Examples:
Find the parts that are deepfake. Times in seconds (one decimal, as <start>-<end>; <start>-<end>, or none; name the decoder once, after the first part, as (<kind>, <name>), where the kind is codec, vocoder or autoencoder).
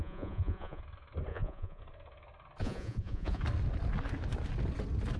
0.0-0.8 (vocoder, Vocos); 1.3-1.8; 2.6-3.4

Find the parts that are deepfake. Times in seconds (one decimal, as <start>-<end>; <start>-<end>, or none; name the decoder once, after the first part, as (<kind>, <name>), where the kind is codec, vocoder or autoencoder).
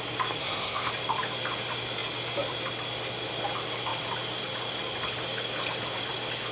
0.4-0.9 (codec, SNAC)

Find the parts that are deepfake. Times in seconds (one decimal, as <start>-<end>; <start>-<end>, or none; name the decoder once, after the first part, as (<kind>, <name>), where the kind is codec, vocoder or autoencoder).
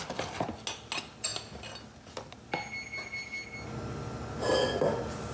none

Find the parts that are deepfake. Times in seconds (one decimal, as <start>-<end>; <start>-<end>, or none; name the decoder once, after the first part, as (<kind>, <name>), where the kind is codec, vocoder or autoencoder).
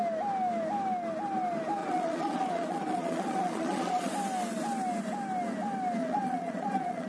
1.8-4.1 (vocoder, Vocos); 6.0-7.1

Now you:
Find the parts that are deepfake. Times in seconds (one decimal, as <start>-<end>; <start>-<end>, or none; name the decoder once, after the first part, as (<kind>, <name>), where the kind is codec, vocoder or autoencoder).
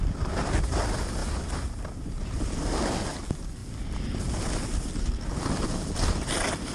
none